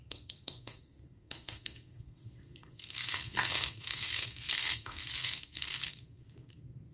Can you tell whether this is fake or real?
fake